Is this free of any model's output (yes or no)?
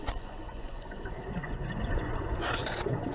no